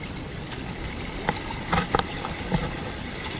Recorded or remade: recorded